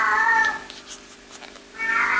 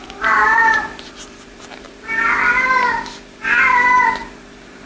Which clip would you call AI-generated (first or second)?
second